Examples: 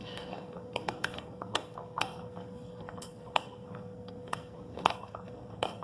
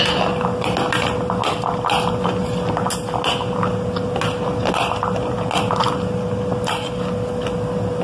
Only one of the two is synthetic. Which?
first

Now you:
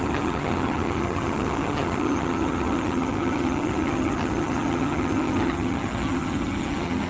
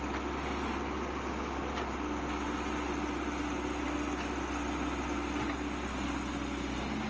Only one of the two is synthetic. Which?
first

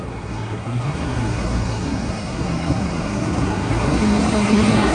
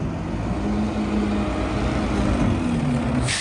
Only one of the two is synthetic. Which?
first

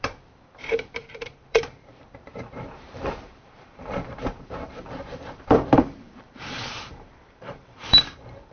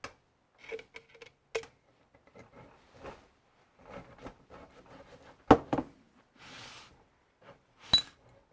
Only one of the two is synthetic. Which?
first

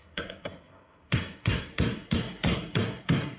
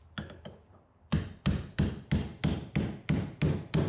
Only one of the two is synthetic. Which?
first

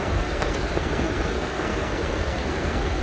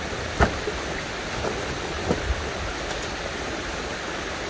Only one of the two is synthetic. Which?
first